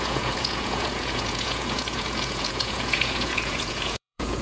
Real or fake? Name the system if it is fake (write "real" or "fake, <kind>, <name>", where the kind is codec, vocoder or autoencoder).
fake, vocoder, Vocos